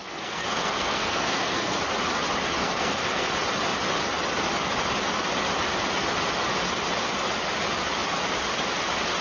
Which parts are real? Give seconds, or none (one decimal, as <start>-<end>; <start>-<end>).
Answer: 1.8-2.6; 3.3-9.2